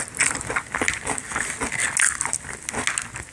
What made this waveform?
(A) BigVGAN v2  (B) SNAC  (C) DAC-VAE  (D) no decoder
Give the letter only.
D